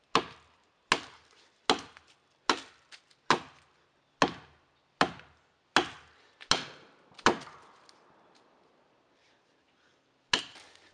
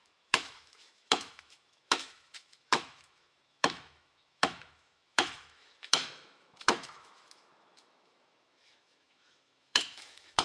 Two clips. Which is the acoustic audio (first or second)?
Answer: first